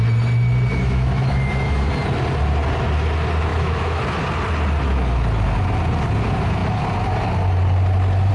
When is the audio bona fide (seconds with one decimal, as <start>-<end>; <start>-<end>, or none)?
0.0-0.7; 1.9-3.5; 4.0-8.3